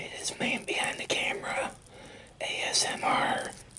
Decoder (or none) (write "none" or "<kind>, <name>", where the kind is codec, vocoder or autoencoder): none